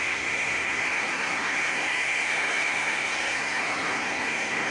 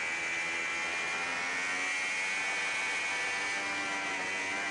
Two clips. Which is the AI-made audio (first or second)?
first